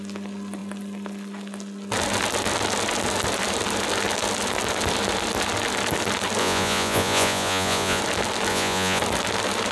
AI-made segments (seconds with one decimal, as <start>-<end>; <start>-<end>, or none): 6.4-8.0; 8.5-9.0